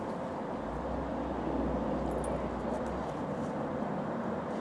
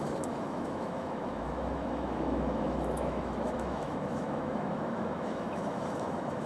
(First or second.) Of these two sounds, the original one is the first